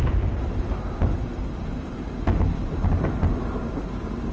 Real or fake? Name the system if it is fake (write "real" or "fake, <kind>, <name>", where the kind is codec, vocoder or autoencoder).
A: real